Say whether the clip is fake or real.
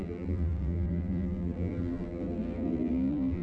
fake